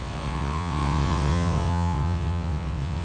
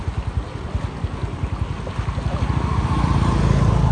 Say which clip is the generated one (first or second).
first